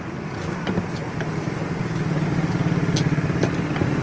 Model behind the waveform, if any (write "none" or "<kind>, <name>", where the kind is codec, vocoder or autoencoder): none